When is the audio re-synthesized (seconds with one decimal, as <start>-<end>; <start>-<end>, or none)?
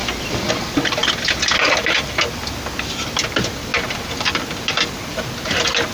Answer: 0.0-0.5